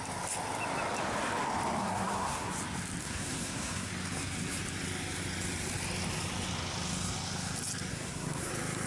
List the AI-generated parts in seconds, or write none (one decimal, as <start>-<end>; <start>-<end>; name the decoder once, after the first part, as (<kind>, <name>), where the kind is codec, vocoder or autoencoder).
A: 1.8-2.5 (codec, SNAC); 3.0-3.9; 7.9-8.5

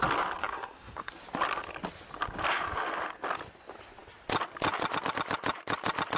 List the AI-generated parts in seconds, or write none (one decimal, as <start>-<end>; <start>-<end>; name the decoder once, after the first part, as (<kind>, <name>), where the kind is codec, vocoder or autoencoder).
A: 0.4-1.1 (codec, SNAC)

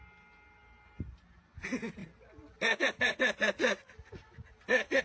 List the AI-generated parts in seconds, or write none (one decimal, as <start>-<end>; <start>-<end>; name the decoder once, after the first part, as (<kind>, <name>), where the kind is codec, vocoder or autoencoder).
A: none

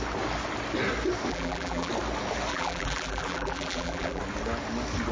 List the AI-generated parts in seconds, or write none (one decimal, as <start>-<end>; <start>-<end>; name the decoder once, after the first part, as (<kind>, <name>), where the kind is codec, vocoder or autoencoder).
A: 1.3-1.9 (vocoder, BigVGAN v2); 2.5-4.2